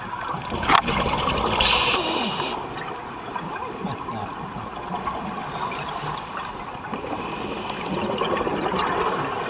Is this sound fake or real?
real